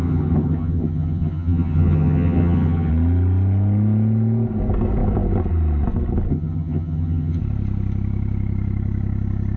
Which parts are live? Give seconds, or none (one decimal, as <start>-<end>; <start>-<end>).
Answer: 2.9-6.3; 7.4-9.6